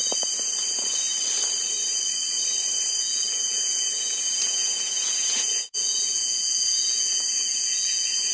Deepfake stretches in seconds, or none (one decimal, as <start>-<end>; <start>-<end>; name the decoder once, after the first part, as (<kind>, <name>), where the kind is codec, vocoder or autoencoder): 3.0-8.3 (vocoder, Vocos)